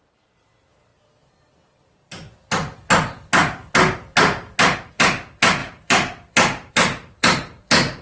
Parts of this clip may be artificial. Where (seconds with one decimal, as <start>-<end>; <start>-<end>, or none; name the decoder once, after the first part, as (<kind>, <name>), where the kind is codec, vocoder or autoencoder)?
0.0-0.9 (vocoder, BigVGAN v2); 4.9-8.0

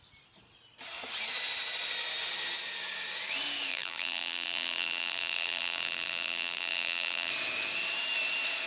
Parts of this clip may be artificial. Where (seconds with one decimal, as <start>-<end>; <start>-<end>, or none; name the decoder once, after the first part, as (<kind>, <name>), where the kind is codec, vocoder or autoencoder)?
3.7-7.3 (vocoder, BigVGAN v2)

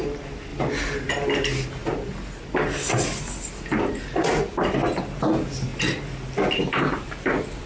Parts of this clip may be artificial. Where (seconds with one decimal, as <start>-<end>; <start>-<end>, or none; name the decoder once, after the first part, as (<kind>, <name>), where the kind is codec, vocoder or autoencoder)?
0.5-1.1 (vocoder, BigVGAN v2); 1.8-4.3

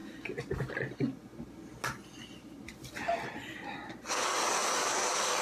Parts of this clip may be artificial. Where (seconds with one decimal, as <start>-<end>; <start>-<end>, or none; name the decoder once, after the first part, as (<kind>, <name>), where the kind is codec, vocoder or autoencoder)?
none

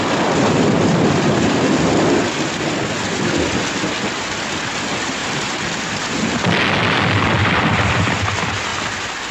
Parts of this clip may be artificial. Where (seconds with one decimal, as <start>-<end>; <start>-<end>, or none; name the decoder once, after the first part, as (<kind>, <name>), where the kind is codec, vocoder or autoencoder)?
5.2-5.8 (vocoder, BigVGAN v2); 7.4-7.9

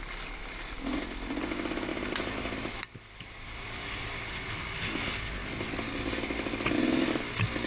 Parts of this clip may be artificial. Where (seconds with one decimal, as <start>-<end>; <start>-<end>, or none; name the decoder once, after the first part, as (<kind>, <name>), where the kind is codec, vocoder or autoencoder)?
1.9-4.2 (vocoder, BigVGAN v2)

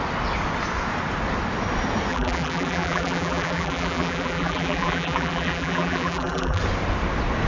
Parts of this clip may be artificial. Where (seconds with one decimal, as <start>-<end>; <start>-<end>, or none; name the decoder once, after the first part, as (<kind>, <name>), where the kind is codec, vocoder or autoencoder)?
2.1-6.6 (vocoder, BigVGAN v2)

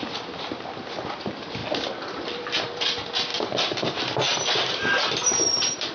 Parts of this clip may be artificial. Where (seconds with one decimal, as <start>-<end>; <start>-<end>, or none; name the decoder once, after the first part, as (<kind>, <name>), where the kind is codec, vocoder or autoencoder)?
0.0-1.6 (vocoder, BigVGAN v2); 2.2-3.3; 4.7-5.9